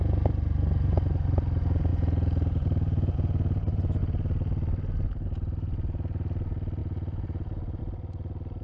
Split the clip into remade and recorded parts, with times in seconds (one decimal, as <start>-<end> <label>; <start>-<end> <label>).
0.0-1.9 recorded; 1.9-4.0 remade; 4.0-6.8 recorded; 6.8-7.8 remade; 7.8-8.6 recorded